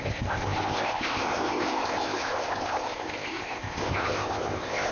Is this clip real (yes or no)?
no